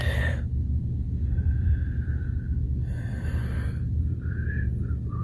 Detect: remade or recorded recorded